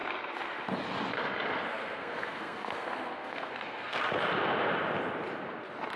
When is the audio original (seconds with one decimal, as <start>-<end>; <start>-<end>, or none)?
0.0-1.7; 4.0-6.0